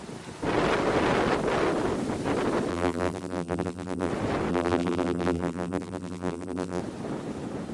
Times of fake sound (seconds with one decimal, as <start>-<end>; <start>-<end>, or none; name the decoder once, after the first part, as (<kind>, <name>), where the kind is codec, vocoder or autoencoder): 2.7-4.1 (vocoder, BigVGAN v2); 4.5-6.8